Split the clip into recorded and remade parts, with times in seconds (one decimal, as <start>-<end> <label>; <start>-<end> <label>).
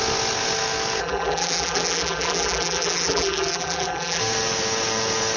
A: 0.0-1.0 recorded; 1.0-4.2 remade; 4.2-5.4 recorded